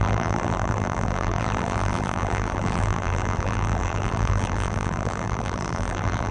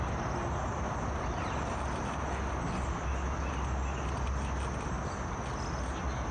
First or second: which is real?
second